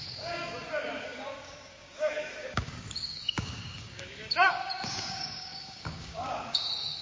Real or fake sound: fake